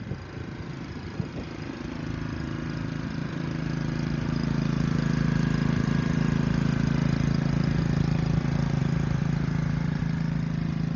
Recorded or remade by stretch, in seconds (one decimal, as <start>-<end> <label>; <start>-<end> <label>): 0.0-3.2 recorded; 3.2-4.6 remade; 4.6-8.8 recorded; 8.8-10.0 remade; 10.0-11.0 recorded